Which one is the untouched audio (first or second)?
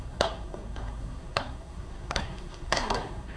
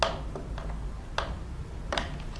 second